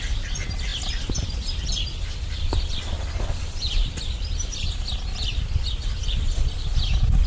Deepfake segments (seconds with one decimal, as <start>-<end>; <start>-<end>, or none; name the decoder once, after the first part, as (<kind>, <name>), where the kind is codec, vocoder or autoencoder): none